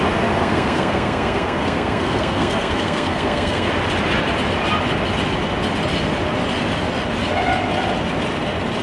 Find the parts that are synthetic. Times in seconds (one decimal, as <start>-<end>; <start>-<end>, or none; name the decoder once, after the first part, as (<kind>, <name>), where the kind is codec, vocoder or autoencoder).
0.4-3.7 (codec, SNAC)